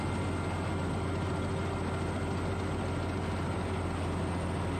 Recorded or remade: recorded